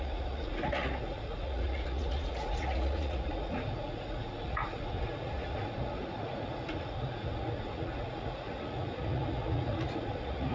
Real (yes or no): no